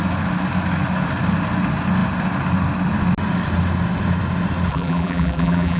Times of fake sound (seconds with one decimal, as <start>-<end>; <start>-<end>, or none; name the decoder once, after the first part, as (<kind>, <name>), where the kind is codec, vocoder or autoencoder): 4.7-5.8 (vocoder, BigVGAN v2)